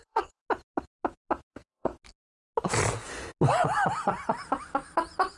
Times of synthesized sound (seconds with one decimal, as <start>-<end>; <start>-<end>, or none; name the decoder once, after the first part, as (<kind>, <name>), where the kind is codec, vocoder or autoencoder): 0.0-0.4 (codec, SNAC); 1.5-1.9